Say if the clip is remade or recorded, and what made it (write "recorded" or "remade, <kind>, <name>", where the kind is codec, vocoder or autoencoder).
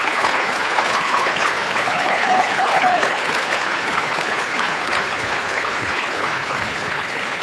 remade, codec, HILCodec